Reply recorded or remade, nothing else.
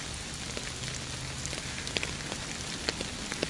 recorded